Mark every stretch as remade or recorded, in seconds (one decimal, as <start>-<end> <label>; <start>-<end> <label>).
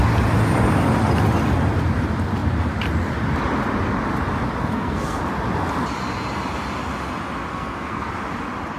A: 0.0-4.6 recorded; 4.6-5.2 remade; 5.2-7.5 recorded; 7.5-8.1 remade; 8.1-8.8 recorded